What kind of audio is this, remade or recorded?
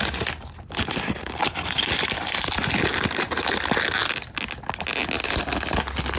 recorded